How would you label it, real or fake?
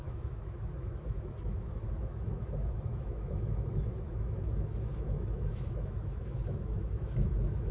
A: fake